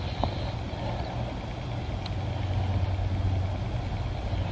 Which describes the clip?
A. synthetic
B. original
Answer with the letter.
B